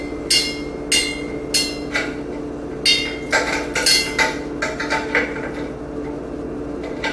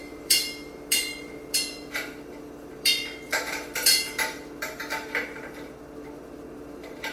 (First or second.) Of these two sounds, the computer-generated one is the second